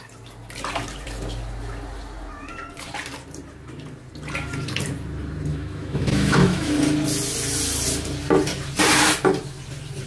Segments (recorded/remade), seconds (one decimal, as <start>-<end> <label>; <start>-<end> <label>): 0.0-5.5 recorded; 5.5-6.7 remade; 6.7-10.1 recorded